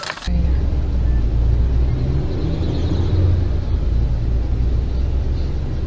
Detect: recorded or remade recorded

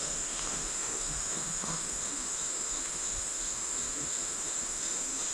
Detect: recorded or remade remade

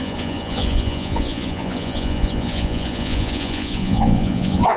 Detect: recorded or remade remade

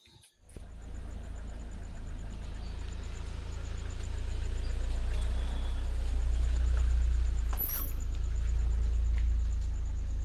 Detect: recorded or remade recorded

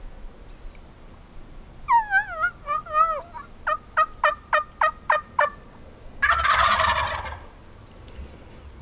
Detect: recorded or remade recorded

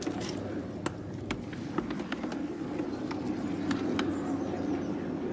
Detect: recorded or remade recorded